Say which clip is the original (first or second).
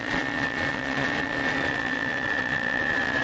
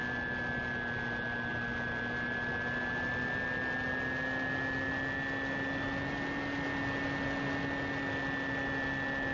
second